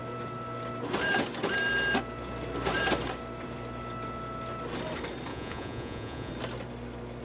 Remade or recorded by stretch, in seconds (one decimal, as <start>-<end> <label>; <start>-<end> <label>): 0.0-5.3 recorded; 5.3-6.3 remade; 6.3-7.2 recorded